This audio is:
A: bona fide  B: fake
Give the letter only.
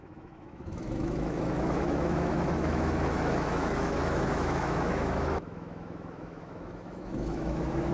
B